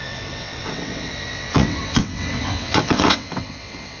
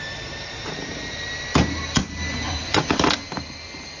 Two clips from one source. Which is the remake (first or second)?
first